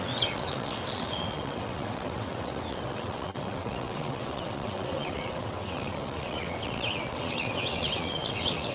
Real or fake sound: fake